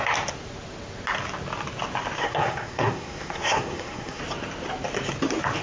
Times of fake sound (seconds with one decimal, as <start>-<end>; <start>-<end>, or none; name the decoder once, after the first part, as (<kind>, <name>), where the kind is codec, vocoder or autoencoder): 2.2-4.2 (codec, SNAC)